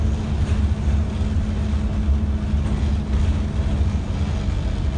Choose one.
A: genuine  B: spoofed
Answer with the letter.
A